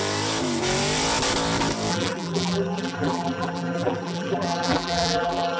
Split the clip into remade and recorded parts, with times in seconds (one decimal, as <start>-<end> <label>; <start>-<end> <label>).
0.0-1.9 recorded; 1.9-5.6 remade